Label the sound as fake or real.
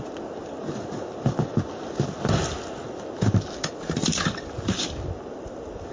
real